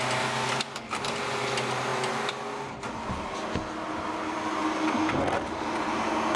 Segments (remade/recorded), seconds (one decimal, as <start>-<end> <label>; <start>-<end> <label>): 0.0-6.4 recorded